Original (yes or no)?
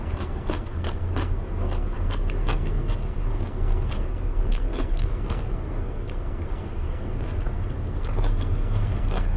no